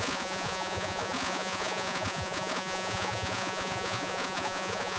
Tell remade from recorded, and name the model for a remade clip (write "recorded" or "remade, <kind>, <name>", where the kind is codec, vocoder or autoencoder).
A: remade, vocoder, Vocos